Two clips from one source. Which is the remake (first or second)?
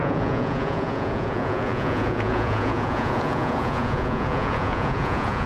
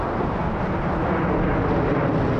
first